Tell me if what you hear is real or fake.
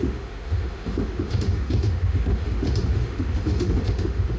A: fake